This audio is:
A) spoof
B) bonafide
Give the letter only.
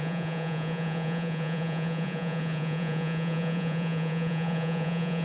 A